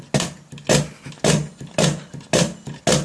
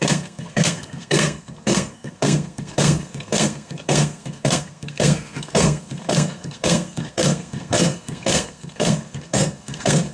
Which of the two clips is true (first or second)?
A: first